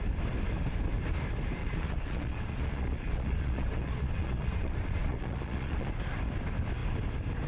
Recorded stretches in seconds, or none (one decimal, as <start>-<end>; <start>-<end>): 0.0-1.6; 5.9-7.5